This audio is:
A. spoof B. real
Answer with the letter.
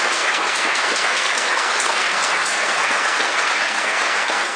A